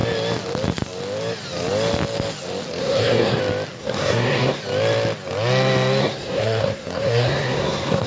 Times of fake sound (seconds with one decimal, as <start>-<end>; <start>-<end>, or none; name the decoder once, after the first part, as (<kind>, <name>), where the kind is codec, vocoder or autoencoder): 2.8-3.4 (codec, SNAC); 3.8-4.6; 6.0-8.1